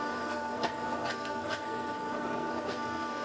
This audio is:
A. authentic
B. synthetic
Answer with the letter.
B